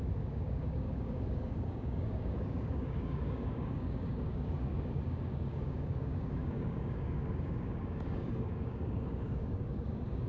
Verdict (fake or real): fake